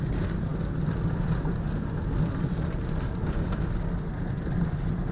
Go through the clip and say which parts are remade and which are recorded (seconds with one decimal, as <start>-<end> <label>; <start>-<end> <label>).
0.0-5.1 recorded